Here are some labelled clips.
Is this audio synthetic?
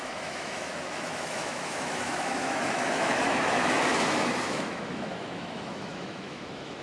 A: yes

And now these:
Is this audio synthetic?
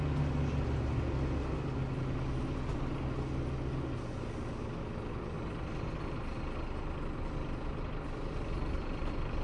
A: no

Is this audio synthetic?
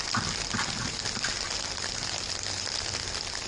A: no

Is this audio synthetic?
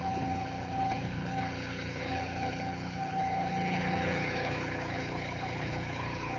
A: yes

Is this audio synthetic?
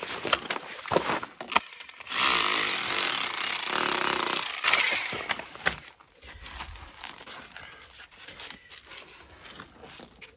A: no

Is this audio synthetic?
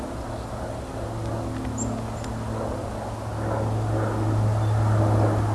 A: no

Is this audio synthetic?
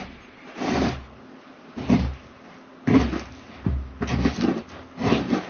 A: no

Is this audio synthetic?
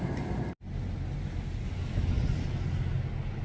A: no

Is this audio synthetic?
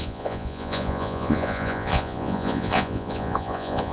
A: yes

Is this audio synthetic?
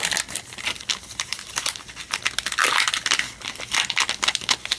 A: no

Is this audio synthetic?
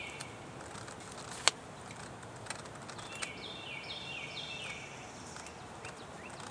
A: no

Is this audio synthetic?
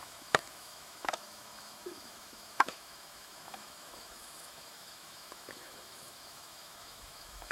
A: yes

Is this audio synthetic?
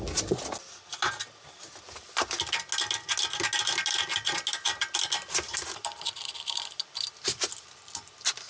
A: no